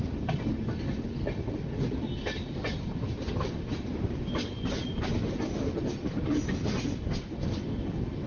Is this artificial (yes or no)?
no